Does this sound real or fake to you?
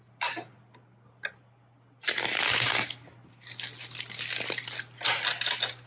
real